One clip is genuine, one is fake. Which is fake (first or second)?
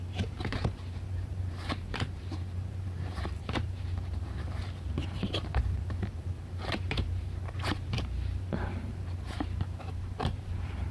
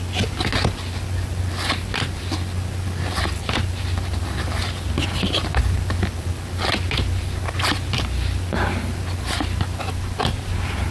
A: first